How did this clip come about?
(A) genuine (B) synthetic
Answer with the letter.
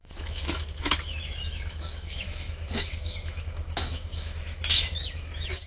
B